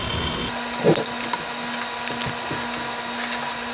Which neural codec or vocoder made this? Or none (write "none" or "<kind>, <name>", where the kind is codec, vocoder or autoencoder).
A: none